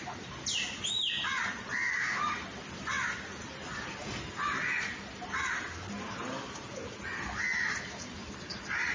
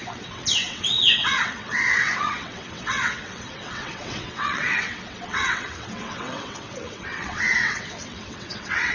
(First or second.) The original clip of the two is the first